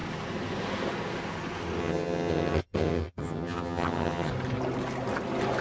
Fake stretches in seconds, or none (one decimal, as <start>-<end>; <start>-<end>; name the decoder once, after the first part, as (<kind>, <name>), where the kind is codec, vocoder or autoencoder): 1.8-4.3 (vocoder, HiFi-GAN)